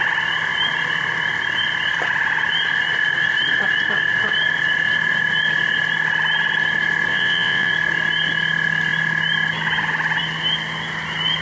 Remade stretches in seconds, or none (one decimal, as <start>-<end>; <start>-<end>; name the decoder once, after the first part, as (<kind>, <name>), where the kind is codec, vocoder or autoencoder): 7.1-7.7 (vocoder, WaveNeXt)